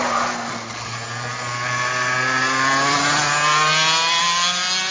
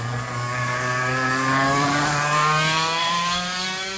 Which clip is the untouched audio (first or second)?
first